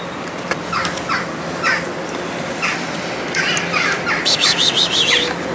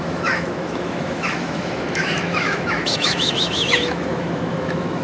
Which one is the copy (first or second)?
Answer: second